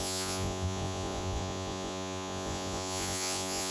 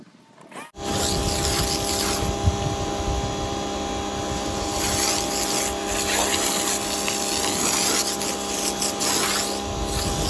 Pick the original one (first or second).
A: second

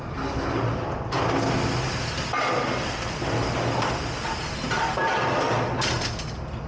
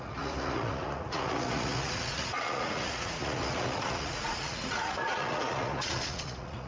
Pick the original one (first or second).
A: first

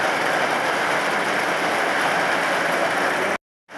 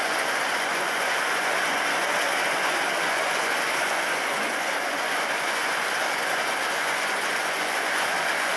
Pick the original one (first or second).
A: first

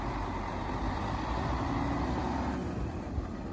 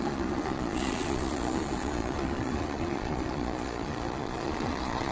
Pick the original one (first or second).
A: first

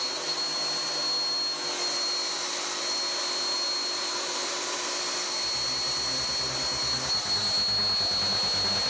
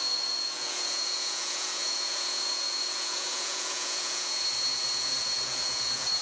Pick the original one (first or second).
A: first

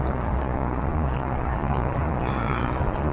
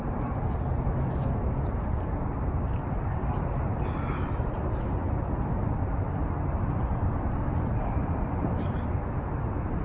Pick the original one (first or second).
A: second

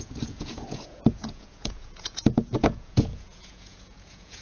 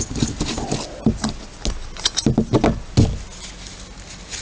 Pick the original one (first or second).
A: second